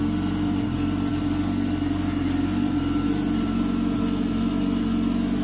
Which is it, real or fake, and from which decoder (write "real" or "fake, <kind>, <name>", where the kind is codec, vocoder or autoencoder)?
real